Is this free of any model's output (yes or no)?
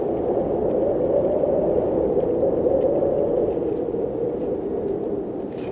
yes